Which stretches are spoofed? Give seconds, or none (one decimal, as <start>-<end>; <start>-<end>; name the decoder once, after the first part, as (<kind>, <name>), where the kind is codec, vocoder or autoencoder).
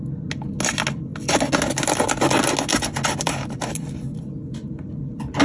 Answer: none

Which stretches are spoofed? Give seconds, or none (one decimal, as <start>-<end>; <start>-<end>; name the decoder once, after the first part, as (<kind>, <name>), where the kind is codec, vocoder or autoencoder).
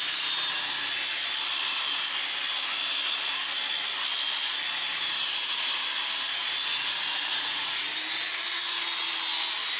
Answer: 7.2-7.9 (vocoder, Vocos)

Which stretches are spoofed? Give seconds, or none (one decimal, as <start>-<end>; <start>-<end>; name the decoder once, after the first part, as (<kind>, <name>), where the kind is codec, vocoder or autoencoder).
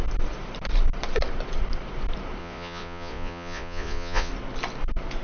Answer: 2.4-4.3 (vocoder, Vocos)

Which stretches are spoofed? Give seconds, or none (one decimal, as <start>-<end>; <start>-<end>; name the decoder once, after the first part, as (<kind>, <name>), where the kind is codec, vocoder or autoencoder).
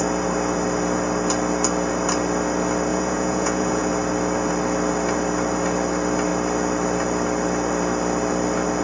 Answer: 2.9-3.9 (vocoder, Vocos)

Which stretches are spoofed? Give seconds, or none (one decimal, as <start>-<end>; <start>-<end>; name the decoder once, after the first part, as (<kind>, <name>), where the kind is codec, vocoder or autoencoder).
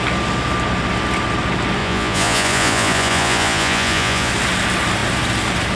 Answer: 1.8-4.3 (vocoder, Vocos)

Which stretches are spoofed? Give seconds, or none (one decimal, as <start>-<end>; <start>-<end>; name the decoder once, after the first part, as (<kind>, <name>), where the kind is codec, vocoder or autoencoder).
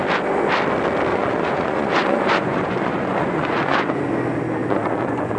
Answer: 1.1-4.1 (vocoder, Vocos); 4.6-5.4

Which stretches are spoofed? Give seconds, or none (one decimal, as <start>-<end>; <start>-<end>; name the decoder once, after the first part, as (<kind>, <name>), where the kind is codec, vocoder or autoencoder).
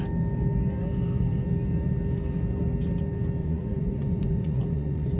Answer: 3.4-5.2 (vocoder, Vocos)